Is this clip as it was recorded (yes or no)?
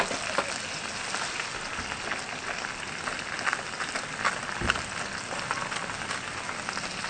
yes